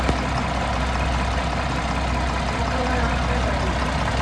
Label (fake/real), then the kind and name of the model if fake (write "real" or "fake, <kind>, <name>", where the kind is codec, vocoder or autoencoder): real